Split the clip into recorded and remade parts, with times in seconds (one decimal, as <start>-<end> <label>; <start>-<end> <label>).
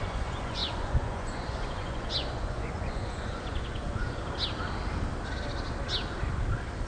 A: 0.0-4.2 remade; 4.2-6.9 recorded